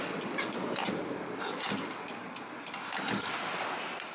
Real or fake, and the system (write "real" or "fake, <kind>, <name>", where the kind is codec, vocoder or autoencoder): real